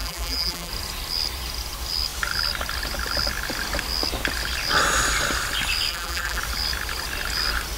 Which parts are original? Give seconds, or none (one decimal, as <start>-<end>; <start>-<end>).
0.7-5.9; 6.4-7.8

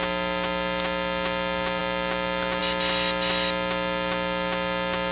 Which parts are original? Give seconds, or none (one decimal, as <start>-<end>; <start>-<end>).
0.0-5.1

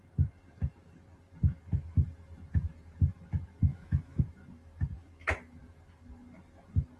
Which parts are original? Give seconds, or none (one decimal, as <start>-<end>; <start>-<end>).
0.0-3.7; 4.2-7.0